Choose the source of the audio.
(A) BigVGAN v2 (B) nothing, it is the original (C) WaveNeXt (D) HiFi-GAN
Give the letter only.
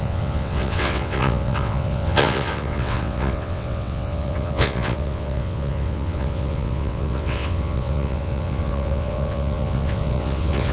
C